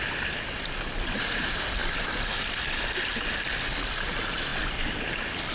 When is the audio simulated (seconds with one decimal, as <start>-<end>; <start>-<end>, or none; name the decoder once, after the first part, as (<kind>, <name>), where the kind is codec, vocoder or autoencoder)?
none